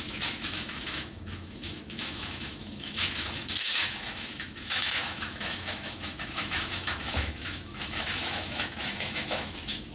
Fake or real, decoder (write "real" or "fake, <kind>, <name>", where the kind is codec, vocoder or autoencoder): fake, autoencoder, DAC-VAE